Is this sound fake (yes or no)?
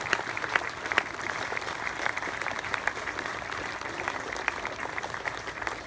no